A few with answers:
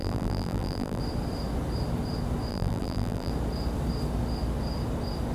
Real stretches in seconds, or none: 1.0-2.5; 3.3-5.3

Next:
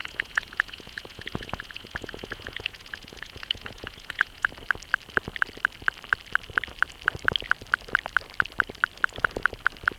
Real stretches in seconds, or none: 4.5-10.0

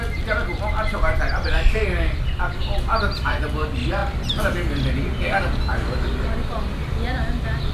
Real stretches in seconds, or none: 0.0-7.7

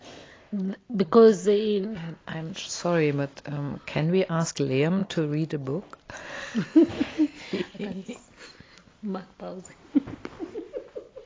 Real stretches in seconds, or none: 0.0-11.3

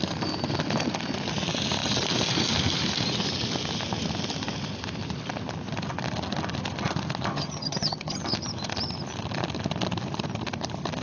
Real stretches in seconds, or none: 0.0-7.3; 8.2-11.0